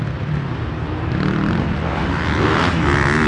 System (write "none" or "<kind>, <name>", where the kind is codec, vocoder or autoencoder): none